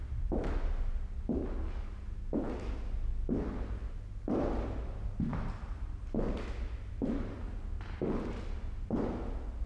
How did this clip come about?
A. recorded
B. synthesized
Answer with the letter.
A